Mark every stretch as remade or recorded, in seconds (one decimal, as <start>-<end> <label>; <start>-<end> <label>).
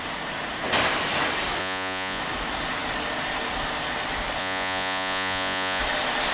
0.0-1.6 recorded; 1.6-2.2 remade; 2.2-4.4 recorded; 4.4-5.8 remade; 5.8-6.3 recorded